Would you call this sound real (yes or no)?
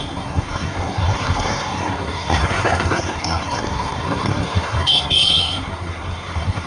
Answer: no